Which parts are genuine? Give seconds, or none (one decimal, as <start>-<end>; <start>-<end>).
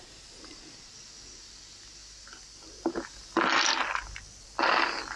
0.0-5.2